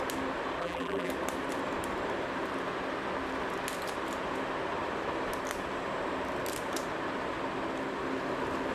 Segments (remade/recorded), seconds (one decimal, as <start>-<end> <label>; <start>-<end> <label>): 0.0-0.6 recorded; 0.6-1.1 remade; 1.1-8.7 recorded